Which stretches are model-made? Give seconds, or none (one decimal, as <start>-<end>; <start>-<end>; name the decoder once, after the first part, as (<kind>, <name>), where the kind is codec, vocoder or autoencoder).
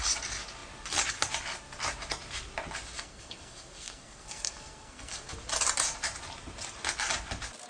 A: 3.0-5.3 (codec, SNAC)